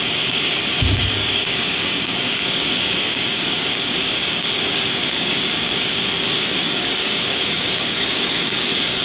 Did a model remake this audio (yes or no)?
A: yes